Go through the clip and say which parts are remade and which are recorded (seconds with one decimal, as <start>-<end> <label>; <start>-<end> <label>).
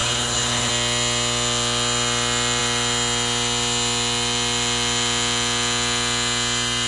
0.0-0.7 remade; 0.7-6.9 recorded